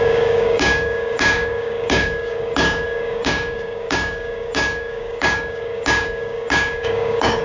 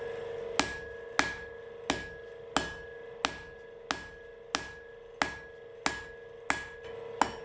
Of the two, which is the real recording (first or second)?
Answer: second